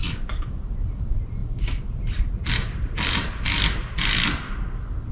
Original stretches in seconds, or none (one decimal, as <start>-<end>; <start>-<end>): 0.0-5.1